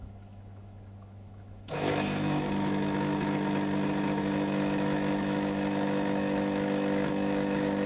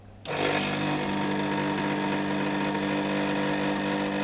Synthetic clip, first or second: first